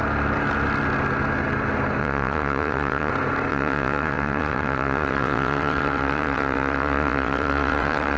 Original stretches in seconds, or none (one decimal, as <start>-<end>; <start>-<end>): 0.0-2.0; 3.1-3.5